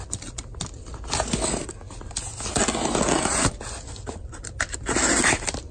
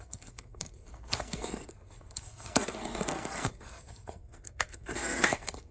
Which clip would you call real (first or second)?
first